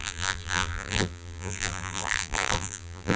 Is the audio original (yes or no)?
no